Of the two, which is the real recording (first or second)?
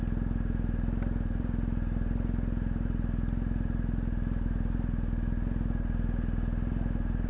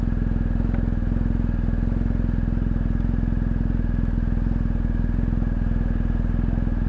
second